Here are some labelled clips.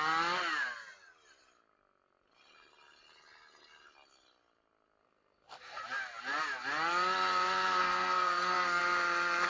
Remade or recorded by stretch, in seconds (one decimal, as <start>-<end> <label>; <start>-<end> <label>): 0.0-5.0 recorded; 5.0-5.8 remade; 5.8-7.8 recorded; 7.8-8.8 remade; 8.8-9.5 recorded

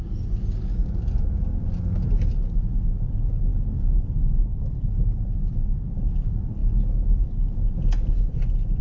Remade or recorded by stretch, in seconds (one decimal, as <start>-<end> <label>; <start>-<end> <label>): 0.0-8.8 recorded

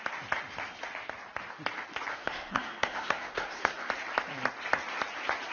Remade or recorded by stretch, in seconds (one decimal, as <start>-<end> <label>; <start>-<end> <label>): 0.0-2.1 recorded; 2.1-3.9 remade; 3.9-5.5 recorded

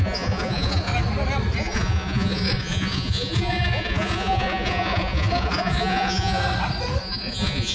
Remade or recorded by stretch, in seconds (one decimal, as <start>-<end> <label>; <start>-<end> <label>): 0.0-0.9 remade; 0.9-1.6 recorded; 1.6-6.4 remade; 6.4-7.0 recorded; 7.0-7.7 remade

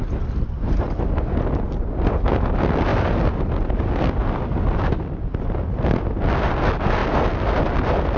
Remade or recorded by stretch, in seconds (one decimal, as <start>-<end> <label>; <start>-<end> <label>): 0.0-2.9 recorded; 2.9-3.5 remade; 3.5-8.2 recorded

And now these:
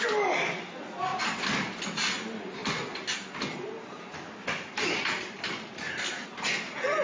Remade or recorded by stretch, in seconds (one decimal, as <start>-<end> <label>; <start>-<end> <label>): 0.0-1.1 recorded; 1.1-1.8 remade; 1.8-7.0 recorded

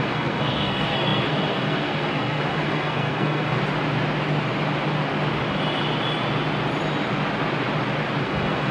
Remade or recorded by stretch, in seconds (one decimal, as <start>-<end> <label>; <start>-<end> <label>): 0.0-3.6 remade; 3.6-8.2 recorded; 8.2-8.7 remade